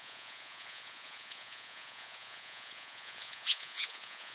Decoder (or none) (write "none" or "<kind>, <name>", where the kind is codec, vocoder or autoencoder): vocoder, Vocos